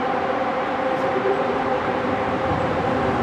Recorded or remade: remade